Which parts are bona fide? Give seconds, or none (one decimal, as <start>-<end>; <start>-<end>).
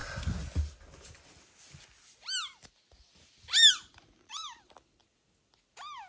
0.0-6.1